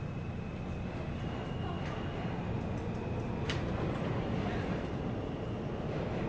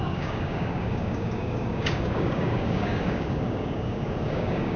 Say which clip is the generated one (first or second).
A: second